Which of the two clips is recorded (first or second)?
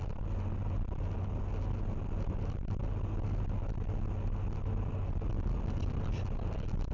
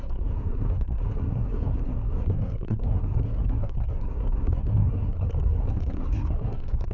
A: first